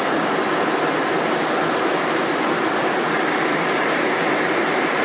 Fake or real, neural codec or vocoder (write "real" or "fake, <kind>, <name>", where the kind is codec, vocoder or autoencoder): real